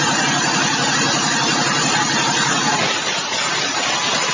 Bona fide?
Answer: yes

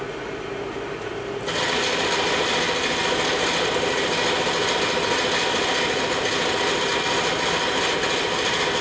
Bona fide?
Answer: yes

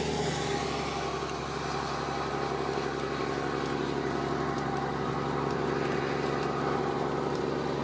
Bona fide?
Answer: yes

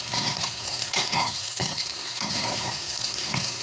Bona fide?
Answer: no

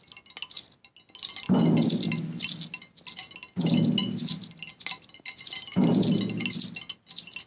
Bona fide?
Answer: yes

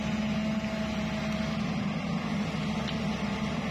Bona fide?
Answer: yes